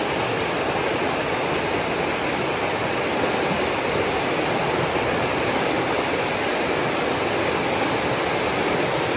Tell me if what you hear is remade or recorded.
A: recorded